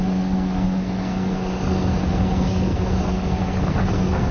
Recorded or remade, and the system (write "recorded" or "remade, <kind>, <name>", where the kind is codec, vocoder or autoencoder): remade, codec, SNAC